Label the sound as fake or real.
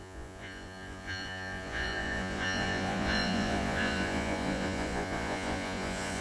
fake